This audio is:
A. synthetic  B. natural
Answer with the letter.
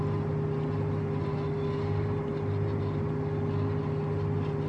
B